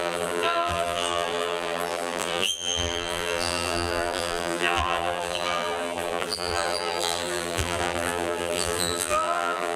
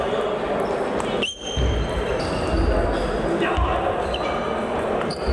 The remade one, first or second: first